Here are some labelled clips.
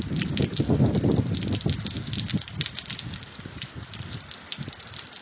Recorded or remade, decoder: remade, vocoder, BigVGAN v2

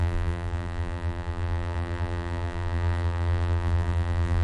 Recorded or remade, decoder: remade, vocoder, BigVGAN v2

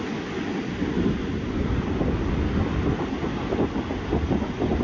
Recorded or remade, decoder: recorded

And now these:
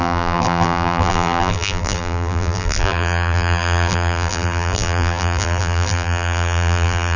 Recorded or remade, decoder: remade, vocoder, BigVGAN v2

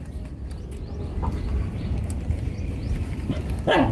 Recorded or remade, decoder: recorded